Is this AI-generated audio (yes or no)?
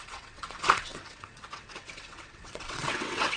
yes